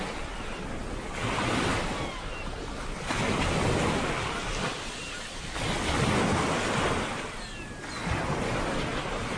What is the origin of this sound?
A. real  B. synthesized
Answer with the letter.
A